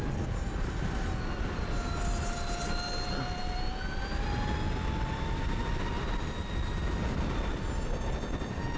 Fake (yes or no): no